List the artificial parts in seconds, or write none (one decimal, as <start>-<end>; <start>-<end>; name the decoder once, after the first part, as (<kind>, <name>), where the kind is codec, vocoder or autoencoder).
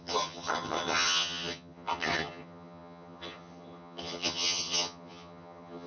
0.0-5.9 (vocoder, HiFi-GAN)